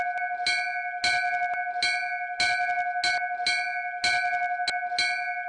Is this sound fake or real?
real